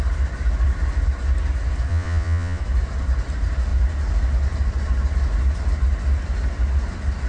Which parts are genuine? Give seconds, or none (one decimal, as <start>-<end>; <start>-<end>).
0.0-1.9; 2.6-7.3